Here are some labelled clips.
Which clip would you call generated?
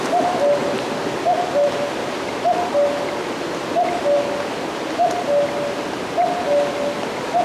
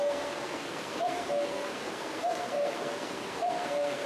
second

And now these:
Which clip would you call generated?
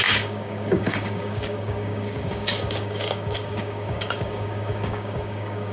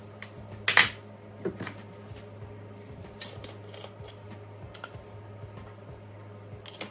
first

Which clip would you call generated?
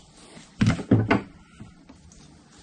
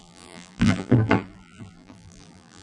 second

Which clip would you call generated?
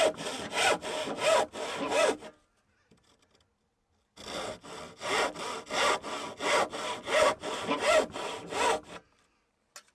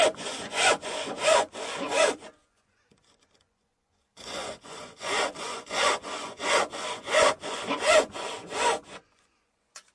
second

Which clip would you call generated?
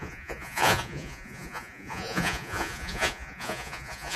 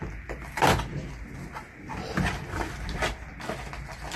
first